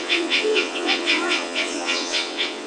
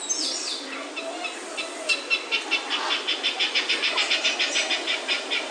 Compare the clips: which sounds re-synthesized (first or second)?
first